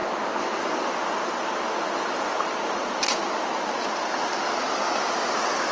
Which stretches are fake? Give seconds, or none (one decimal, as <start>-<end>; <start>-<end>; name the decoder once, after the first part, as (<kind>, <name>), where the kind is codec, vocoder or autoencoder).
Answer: none

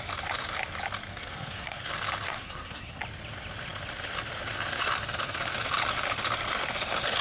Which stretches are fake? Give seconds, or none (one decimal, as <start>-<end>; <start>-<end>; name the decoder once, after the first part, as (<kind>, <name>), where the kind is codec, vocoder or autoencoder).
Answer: 1.1-1.9 (codec, SNAC); 2.3-3.0

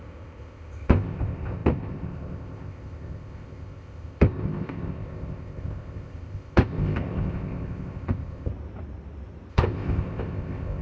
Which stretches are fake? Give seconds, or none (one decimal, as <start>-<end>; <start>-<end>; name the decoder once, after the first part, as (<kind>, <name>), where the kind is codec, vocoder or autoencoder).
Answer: 0.0-8.5 (codec, ZipCodec); 9.5-10.8

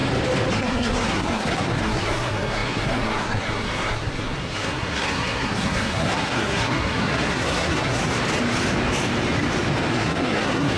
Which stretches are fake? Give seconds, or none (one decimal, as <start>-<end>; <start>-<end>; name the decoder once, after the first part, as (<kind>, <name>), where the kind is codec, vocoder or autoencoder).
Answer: 0.5-8.0 (codec, SNAC); 9.9-10.8

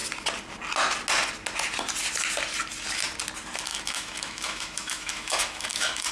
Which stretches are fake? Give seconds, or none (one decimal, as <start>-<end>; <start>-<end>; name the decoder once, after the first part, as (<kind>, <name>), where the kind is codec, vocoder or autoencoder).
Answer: 3.7-6.1 (autoencoder, DAC-VAE)

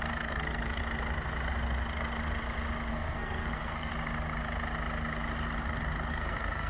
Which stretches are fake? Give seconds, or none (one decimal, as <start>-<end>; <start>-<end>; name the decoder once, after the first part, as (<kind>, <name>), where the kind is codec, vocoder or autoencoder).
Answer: 0.0-0.8 (codec, SNAC); 2.9-3.9; 6.1-6.7

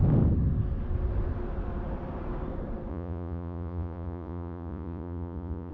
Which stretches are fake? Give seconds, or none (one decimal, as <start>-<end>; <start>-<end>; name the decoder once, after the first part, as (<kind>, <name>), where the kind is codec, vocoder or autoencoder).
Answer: 2.9-5.7 (vocoder, Vocos)

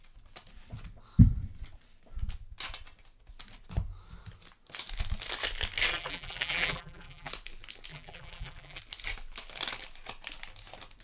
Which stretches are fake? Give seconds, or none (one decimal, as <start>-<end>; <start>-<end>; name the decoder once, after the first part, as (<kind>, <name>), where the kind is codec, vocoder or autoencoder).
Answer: 5.9-7.3 (vocoder, BigVGAN v2); 7.9-8.8